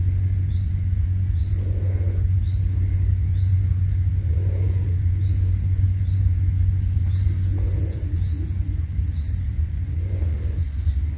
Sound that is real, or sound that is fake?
fake